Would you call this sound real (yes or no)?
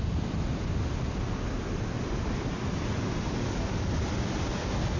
yes